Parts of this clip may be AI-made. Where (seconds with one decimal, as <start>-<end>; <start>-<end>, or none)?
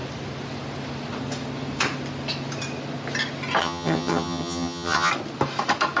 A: 3.6-5.1